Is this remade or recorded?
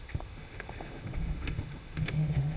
remade